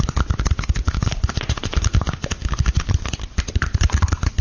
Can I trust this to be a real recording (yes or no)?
yes